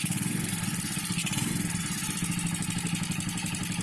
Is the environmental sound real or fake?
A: real